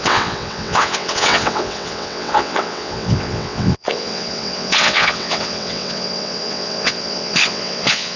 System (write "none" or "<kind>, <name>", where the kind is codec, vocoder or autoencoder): vocoder, WaveNeXt